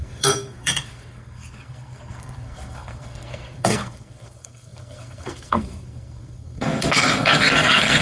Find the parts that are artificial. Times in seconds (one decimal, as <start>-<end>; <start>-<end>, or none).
0.0-8.0